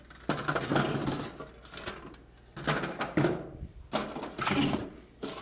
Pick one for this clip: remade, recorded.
recorded